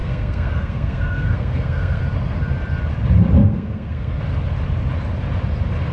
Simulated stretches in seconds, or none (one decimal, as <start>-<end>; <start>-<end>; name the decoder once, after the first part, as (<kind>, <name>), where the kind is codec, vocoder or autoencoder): 0.0-2.0 (codec, SNAC); 3.4-4.2